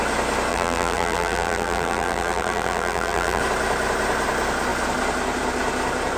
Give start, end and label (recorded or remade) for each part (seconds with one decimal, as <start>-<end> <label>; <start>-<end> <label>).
0.0-0.5 recorded; 0.5-3.4 remade; 3.4-6.2 recorded